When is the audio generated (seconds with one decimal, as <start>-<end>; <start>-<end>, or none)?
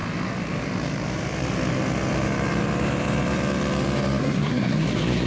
4.2-5.3